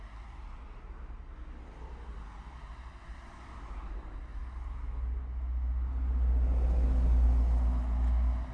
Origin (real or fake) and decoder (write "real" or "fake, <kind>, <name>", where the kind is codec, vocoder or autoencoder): real